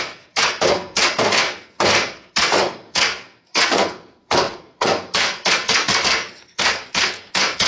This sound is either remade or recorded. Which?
remade